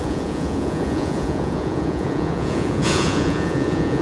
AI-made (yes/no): yes